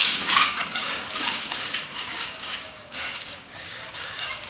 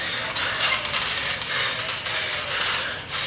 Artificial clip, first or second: first